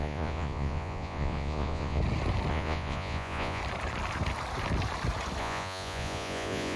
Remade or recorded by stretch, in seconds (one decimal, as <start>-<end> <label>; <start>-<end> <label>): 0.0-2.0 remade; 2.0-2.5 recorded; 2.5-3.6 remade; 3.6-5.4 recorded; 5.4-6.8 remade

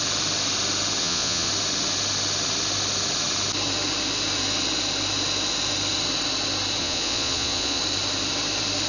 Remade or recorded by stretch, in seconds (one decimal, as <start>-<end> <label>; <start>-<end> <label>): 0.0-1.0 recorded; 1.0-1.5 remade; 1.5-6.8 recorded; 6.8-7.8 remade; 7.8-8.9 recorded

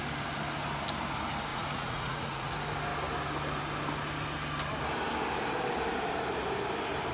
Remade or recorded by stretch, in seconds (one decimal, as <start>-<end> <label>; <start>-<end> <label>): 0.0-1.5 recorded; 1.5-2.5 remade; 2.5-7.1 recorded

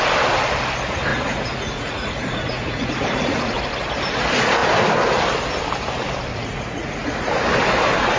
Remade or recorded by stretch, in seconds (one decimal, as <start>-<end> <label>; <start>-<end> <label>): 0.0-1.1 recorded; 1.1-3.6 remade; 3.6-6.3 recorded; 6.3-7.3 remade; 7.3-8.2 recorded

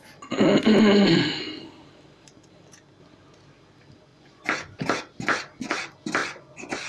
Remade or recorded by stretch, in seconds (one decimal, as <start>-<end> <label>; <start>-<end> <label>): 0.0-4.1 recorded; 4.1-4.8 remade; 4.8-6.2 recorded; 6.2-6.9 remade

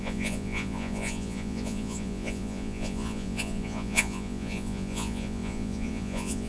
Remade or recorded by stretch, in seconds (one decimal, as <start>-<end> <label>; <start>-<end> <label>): 0.0-6.5 remade

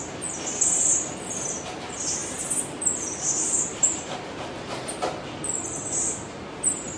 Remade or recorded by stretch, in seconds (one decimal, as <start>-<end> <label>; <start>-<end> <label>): 0.0-7.0 recorded

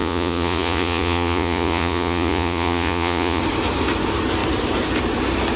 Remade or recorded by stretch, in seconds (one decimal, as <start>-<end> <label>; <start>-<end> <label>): 0.0-3.4 remade; 3.4-5.6 recorded